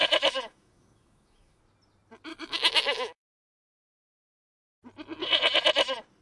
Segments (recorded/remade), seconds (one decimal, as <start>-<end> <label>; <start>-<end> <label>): 0.0-1.6 remade; 1.6-2.3 recorded; 2.3-3.7 remade; 3.7-6.2 recorded